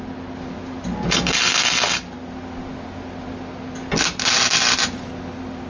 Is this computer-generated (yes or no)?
no